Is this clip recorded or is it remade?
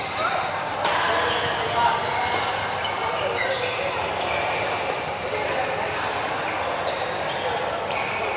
recorded